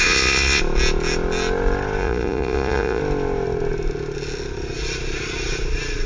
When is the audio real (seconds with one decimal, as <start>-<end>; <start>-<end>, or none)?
0.6-2.0; 3.0-6.1